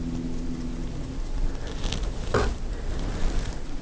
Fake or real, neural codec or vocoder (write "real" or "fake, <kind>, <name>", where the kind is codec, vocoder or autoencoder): real